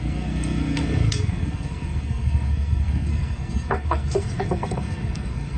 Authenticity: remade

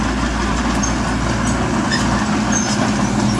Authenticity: recorded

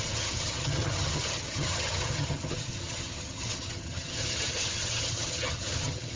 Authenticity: remade